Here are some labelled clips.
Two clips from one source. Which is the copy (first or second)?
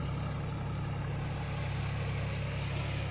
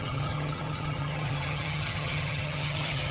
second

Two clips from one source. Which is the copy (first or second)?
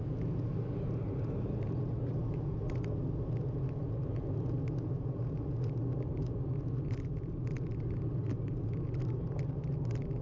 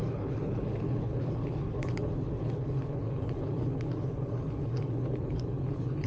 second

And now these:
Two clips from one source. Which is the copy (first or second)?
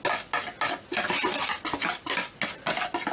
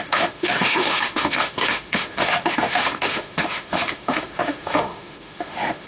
second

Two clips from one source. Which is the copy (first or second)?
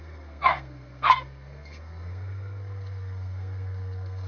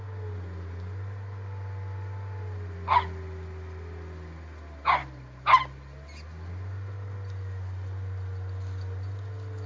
first